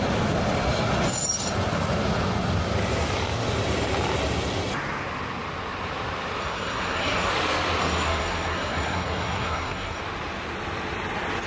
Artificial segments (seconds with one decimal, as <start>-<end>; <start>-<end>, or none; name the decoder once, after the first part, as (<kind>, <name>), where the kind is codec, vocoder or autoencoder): 6.4-7.3 (codec, SNAC); 7.8-10.0